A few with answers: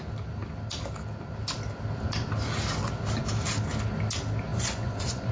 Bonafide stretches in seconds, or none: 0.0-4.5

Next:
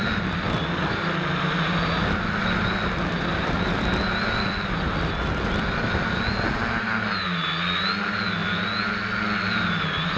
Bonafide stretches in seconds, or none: 0.0-10.2

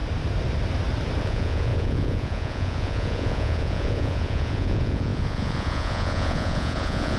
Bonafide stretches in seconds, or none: 0.0-1.2

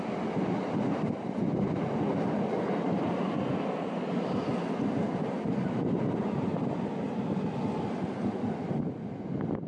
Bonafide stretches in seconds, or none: 0.0-9.7

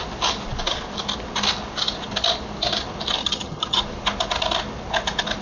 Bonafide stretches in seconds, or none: 0.0-3.2; 3.8-5.4

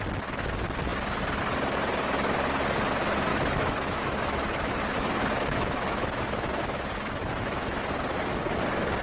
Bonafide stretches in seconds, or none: 0.0-3.3; 7.8-9.0

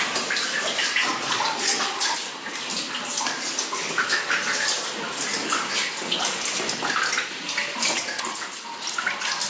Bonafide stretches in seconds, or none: 0.0-1.0; 2.0-9.5

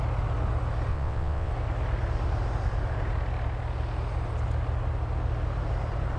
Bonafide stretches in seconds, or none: 0.0-0.9; 1.5-6.2